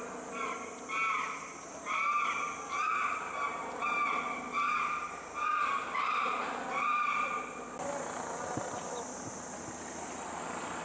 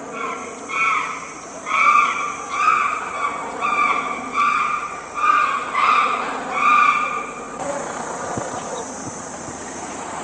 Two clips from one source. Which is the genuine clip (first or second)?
first